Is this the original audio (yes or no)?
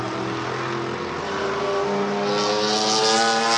yes